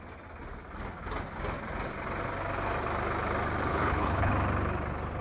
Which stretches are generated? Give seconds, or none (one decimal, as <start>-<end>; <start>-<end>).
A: 3.7-4.3